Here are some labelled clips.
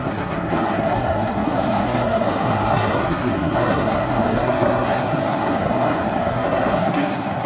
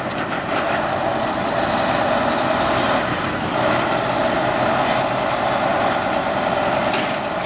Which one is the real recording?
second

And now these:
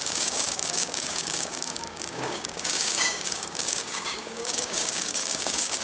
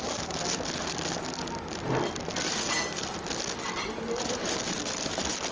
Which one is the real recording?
second